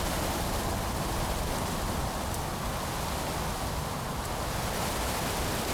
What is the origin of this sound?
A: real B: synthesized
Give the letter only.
A